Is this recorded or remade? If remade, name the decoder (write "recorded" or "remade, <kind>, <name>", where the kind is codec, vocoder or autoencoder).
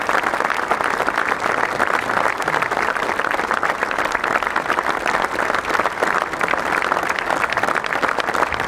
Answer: recorded